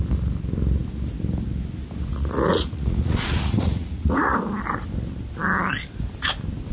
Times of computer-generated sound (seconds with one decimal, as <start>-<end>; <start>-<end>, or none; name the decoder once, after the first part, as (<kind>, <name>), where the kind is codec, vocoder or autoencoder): 2.1-4.4 (vocoder, Vocos)